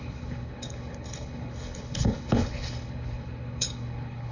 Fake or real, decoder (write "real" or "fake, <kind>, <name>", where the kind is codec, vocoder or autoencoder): fake, codec, HILCodec